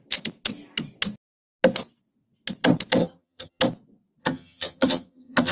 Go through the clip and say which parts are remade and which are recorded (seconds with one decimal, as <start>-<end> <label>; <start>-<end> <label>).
0.0-3.0 recorded; 3.0-3.6 remade; 3.6-4.2 recorded; 4.2-5.5 remade